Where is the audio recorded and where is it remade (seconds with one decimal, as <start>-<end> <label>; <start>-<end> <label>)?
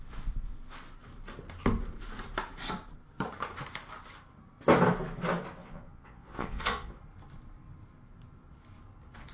0.0-5.6 recorded; 5.6-7.0 remade; 7.0-9.3 recorded